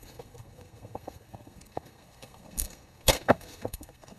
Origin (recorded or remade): remade